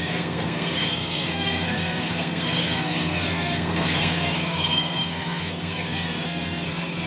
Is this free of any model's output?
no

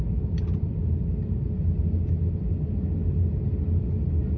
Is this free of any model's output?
yes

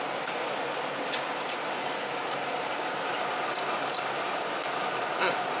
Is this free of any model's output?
yes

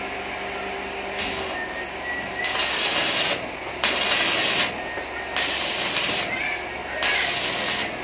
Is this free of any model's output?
yes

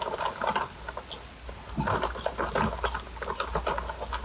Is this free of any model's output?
yes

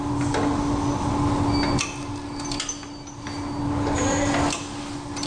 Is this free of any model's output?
yes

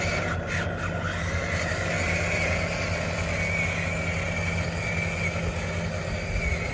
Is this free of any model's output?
yes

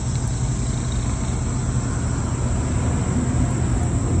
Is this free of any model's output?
yes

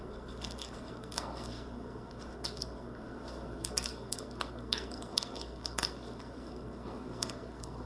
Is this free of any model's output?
no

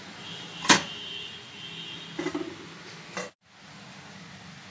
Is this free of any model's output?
yes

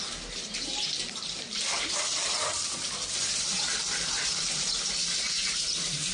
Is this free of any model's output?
no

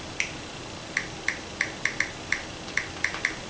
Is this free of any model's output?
yes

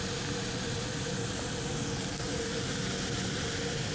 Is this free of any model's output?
yes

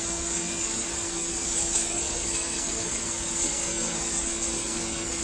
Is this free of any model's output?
no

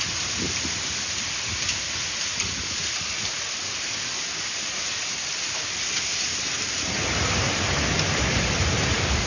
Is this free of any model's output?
no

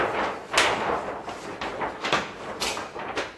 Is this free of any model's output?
yes